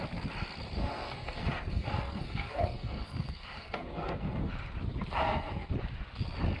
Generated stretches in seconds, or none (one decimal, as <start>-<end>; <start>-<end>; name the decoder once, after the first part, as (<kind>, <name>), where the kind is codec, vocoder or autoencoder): 0.8-4.5 (codec, SNAC); 5.2-5.7